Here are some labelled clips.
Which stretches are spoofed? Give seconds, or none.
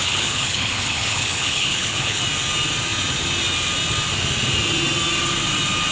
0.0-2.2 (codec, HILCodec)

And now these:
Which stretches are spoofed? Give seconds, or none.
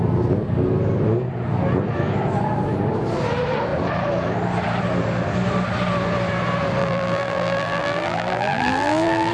6.8-9.3 (vocoder, BigVGAN v2)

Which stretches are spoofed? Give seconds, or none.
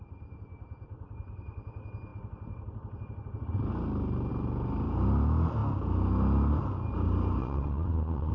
7.4-8.3 (vocoder, Vocos)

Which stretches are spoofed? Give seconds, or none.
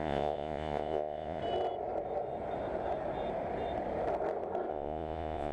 0.0-1.4 (vocoder, Vocos); 4.7-5.5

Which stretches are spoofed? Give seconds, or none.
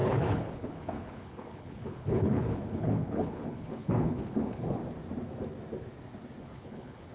0.0-4.8 (codec, HILCodec); 6.4-7.1